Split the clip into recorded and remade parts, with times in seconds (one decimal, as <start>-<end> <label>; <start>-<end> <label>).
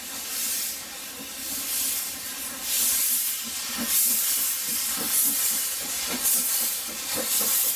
0.0-7.8 recorded